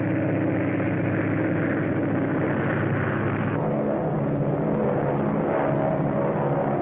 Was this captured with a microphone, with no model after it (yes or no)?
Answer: yes